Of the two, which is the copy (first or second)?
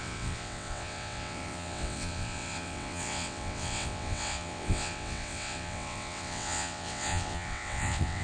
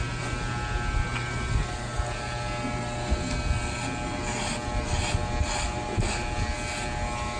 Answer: first